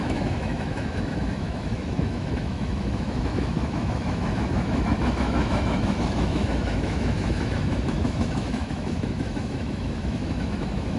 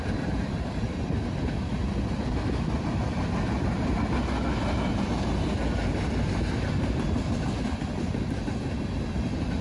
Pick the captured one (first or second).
second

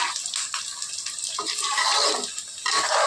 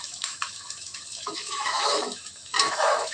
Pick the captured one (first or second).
first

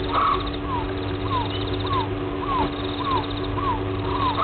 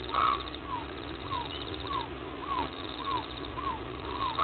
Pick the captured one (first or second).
first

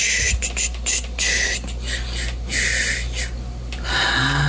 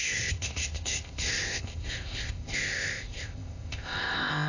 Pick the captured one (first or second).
first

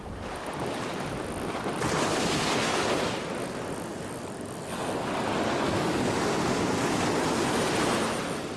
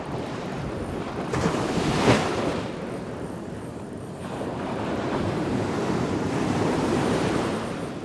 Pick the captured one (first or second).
first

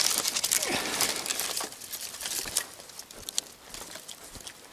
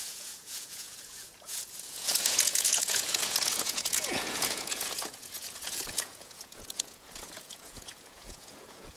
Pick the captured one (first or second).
first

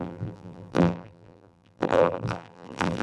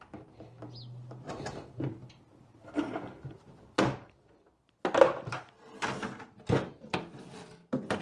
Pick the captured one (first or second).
second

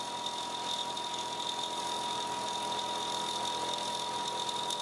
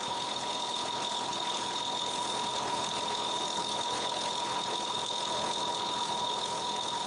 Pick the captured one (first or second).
first